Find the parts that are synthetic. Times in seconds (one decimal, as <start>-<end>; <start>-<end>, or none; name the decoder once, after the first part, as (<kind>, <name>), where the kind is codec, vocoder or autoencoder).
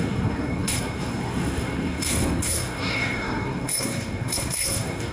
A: 0.0-5.1 (codec, SNAC)